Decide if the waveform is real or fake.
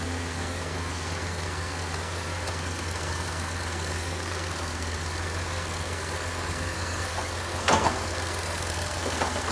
fake